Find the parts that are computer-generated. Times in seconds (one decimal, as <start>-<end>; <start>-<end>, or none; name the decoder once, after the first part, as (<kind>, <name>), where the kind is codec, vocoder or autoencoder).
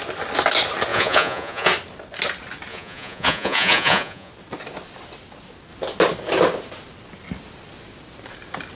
0.9-1.7 (vocoder, Vocos); 2.7-4.3